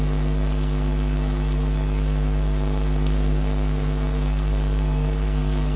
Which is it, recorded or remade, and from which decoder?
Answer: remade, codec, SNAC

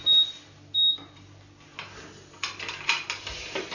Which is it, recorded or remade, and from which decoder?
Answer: recorded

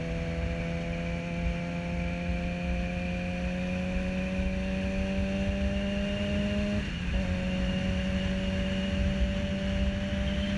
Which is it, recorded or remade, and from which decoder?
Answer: recorded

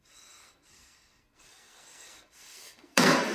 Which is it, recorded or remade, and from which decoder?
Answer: remade, codec, SNAC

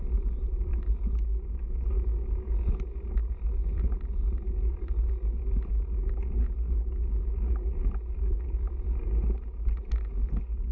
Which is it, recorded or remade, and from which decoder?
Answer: recorded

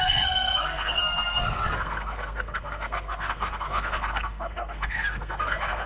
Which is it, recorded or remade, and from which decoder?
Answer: remade, codec, SNAC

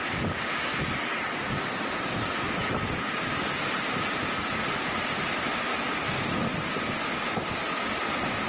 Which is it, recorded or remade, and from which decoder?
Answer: recorded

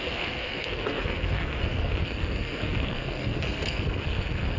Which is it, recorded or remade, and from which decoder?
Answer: remade, codec, SNAC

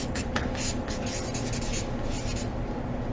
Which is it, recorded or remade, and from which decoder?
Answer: recorded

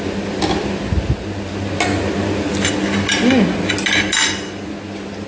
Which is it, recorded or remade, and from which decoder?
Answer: recorded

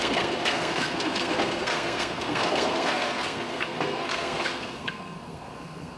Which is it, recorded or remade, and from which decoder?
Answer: remade, codec, SNAC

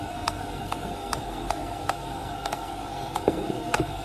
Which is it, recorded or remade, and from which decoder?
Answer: remade, codec, SNAC